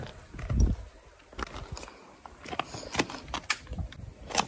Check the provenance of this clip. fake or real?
real